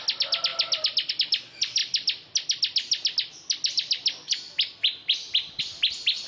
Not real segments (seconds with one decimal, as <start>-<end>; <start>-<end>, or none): none